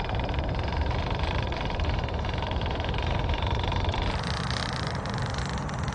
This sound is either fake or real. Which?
fake